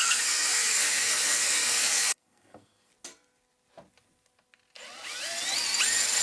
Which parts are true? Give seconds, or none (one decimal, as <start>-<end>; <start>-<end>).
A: 2.9-6.2